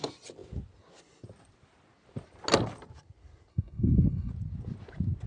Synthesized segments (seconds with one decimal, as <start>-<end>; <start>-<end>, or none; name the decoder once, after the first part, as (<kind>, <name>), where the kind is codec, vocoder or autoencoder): 3.5-4.3 (codec, SNAC)

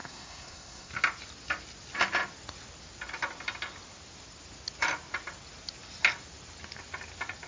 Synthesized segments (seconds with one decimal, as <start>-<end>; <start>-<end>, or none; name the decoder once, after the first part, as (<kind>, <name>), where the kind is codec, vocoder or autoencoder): 0.0-0.9 (codec, SNAC)

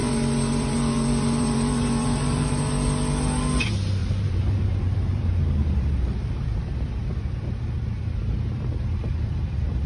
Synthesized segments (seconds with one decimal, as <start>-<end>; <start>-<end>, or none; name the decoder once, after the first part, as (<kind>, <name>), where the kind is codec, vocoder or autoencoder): 0.0-2.7 (vocoder, BigVGAN v2); 4.0-6.3